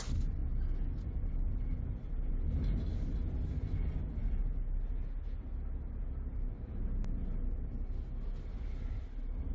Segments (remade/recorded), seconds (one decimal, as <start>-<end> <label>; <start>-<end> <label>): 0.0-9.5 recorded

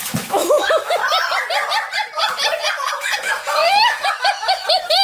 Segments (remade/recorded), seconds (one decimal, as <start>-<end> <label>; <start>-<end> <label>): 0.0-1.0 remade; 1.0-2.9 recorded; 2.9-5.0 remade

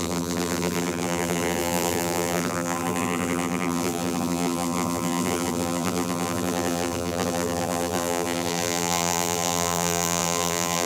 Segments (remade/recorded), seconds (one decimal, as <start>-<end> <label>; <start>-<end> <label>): 0.0-10.9 remade